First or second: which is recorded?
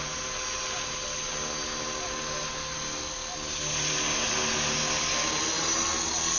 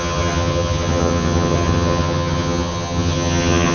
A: first